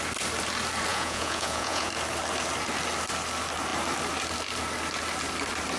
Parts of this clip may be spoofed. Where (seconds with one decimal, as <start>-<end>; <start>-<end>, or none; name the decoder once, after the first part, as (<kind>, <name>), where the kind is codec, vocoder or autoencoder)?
0.9-1.9 (vocoder, Vocos)